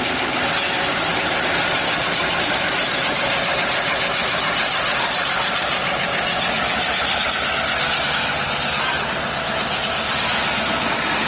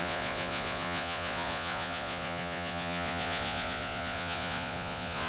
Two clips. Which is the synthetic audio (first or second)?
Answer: second